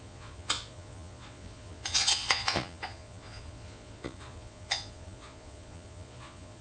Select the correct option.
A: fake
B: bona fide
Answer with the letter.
A